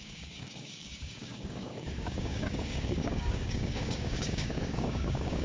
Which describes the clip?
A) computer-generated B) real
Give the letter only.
A